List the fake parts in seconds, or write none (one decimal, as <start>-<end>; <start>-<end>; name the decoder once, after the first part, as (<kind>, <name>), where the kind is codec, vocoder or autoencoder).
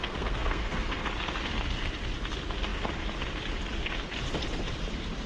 0.0-1.0 (codec, SNAC)